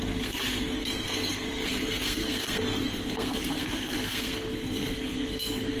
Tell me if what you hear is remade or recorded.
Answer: remade